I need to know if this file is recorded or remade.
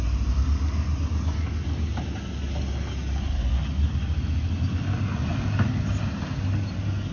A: recorded